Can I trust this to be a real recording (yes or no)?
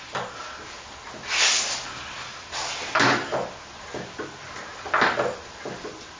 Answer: yes